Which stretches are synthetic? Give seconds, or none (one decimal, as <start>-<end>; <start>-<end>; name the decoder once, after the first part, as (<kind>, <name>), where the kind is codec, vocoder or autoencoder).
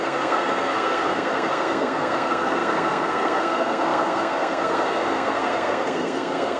0.0-6.6 (codec, SNAC)